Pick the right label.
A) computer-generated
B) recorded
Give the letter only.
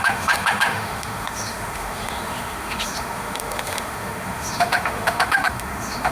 A